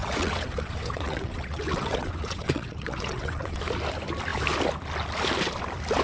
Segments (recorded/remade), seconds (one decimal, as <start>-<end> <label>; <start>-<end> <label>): 0.0-3.6 remade; 3.6-6.0 recorded